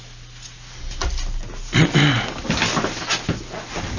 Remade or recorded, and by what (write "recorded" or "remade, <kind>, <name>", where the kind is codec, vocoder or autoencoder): recorded